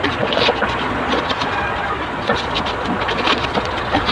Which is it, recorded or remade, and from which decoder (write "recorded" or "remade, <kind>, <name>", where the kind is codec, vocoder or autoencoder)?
remade, vocoder, Vocos